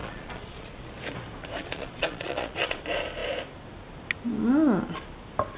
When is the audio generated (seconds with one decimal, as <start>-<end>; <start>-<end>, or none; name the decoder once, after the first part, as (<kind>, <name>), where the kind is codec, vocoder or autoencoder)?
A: 0.0-0.8 (vocoder, Vocos); 1.6-2.8